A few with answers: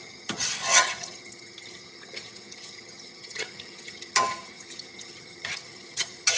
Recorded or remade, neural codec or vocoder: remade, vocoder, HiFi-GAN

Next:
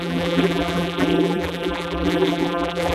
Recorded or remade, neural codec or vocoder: remade, vocoder, BigVGAN v2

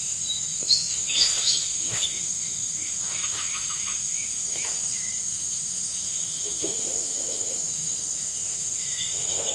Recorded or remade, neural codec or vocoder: remade, autoencoder, DAC-VAE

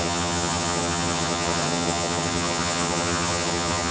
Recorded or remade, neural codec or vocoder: remade, vocoder, HiFi-GAN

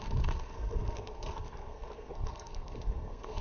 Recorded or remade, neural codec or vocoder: remade, codec, SNAC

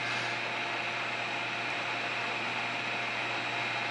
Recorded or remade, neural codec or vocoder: recorded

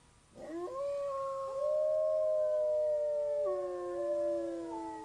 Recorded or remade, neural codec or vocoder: recorded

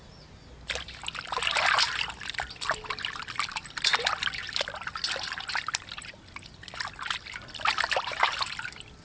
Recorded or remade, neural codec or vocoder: recorded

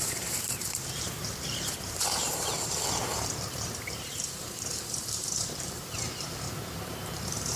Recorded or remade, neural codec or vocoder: remade, vocoder, BigVGAN v2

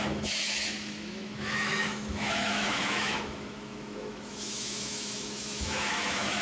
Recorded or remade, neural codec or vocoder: remade, autoencoder, DAC-VAE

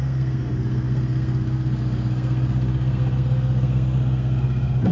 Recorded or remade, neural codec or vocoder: remade, codec, SNAC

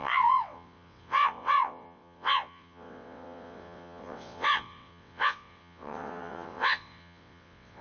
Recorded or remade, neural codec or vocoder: remade, vocoder, WaveNeXt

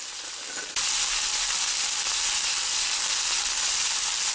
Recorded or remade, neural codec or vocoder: recorded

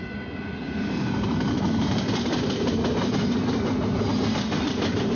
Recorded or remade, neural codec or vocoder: recorded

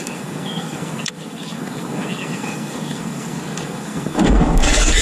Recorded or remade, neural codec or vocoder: remade, codec, SNAC